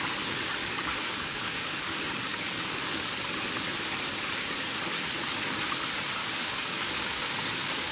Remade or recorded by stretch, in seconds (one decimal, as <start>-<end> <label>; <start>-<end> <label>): 0.0-0.6 recorded; 0.6-1.8 remade; 1.8-2.3 recorded; 2.3-3.2 remade; 3.2-6.2 recorded; 6.2-7.9 remade